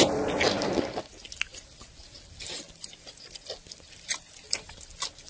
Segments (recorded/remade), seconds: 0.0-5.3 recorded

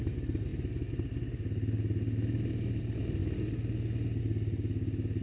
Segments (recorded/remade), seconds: 0.0-5.2 recorded

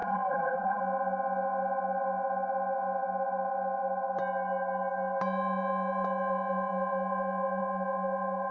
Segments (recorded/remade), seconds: 0.0-0.8 remade; 0.8-8.5 recorded

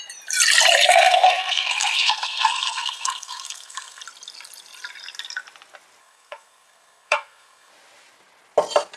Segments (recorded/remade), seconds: 0.0-0.9 recorded; 0.9-4.0 remade; 4.0-6.0 recorded; 6.0-7.7 remade; 7.7-9.0 recorded

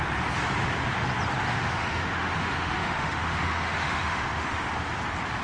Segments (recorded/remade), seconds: 0.0-1.5 recorded; 1.5-4.7 remade; 4.7-5.4 recorded